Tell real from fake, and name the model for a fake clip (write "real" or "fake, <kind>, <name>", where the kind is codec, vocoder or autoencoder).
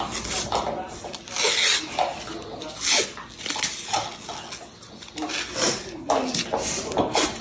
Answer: real